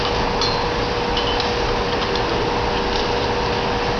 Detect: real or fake real